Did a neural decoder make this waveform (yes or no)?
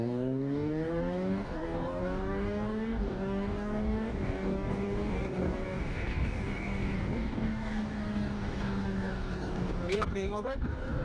yes